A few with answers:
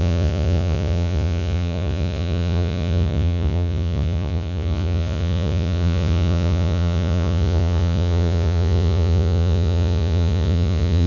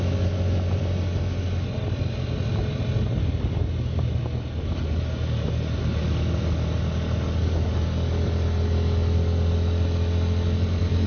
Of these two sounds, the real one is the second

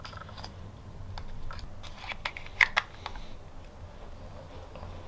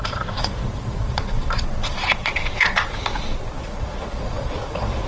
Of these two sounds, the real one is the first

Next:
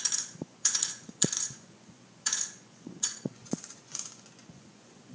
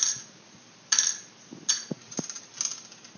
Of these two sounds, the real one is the second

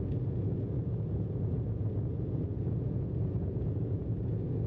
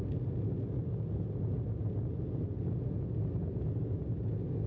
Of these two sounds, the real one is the second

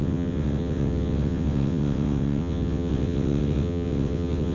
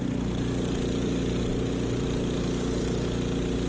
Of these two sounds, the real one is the second